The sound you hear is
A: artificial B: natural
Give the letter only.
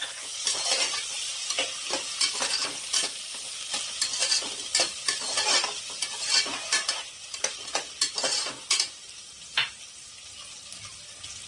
B